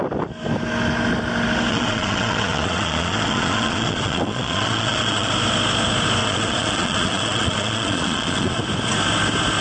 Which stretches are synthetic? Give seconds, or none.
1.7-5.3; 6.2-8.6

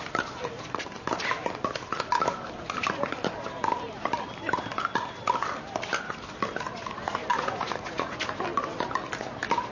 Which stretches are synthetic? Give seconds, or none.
7.3-8.1